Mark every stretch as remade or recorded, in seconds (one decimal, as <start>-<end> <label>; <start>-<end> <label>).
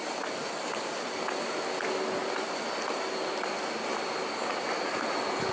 0.0-2.2 recorded; 2.2-4.2 remade; 4.2-5.5 recorded